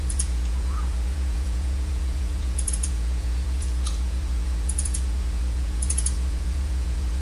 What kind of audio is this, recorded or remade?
remade